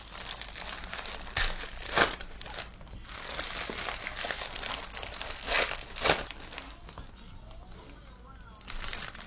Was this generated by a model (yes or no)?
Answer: no